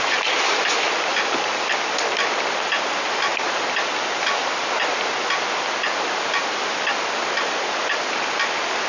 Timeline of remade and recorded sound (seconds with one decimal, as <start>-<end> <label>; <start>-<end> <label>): 0.0-1.1 recorded; 1.1-1.9 remade; 1.9-8.9 recorded